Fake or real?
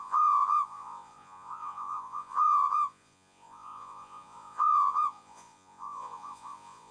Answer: fake